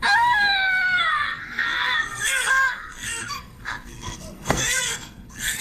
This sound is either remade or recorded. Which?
remade